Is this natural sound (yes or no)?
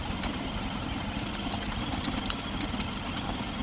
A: yes